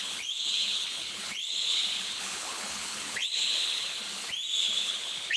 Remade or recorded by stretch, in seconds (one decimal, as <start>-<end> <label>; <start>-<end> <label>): 0.0-4.0 remade; 4.0-4.6 recorded; 4.6-5.4 remade